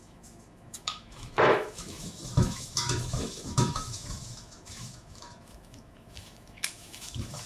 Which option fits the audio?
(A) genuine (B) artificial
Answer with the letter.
B